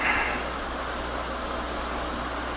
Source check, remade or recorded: recorded